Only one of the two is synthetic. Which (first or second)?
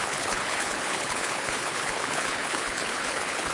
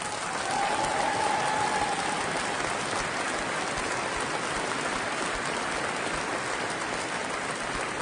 first